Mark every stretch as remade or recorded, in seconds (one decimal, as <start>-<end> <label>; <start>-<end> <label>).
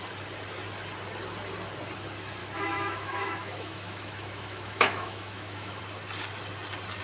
0.0-2.4 recorded; 2.4-5.8 remade; 5.8-7.0 recorded